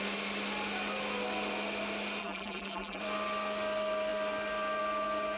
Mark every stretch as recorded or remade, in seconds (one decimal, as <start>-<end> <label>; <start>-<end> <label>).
0.0-2.2 recorded; 2.2-3.0 remade; 3.0-5.4 recorded